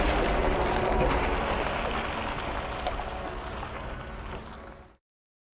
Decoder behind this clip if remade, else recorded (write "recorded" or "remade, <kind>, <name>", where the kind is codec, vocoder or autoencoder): recorded